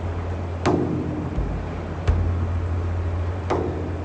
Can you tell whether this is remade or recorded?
recorded